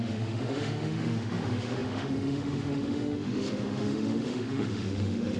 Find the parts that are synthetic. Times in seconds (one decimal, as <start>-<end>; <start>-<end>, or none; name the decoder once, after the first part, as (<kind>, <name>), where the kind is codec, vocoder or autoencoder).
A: 0.0-5.4 (autoencoder, DAC-VAE)